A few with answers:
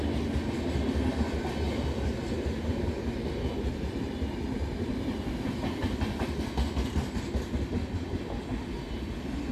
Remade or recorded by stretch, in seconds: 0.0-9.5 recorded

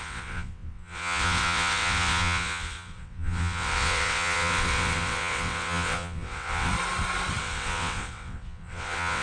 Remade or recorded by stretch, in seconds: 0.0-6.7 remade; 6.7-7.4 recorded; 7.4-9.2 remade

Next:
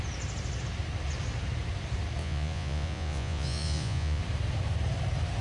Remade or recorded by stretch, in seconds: 0.0-2.2 recorded; 2.2-4.2 remade; 4.2-5.4 recorded

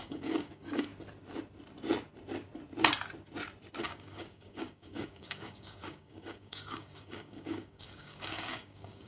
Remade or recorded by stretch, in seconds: 0.0-0.9 remade; 0.9-3.8 recorded; 3.8-9.1 remade

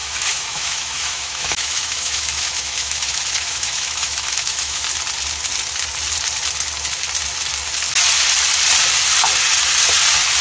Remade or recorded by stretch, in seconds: 0.0-4.8 remade; 4.8-10.4 recorded